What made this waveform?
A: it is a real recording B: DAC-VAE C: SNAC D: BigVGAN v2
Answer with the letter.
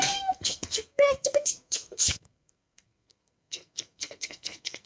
C